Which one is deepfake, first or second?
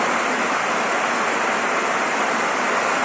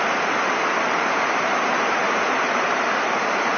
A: second